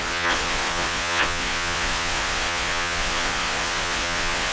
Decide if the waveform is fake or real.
fake